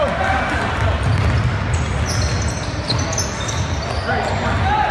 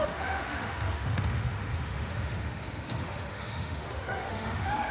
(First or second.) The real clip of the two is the first